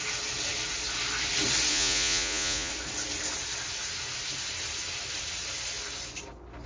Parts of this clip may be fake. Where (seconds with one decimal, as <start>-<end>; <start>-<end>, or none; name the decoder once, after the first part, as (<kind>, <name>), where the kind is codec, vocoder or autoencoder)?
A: 1.7-2.7 (vocoder, Vocos)